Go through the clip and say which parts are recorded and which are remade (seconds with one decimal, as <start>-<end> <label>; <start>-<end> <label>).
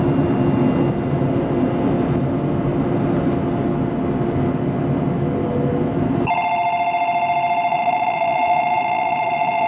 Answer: 0.0-7.7 recorded; 7.7-9.7 remade